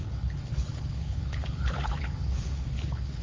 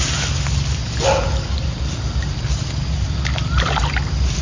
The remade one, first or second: first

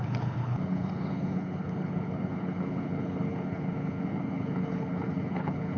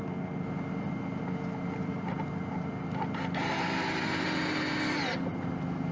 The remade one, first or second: first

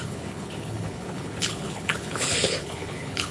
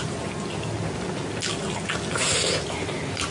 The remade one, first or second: first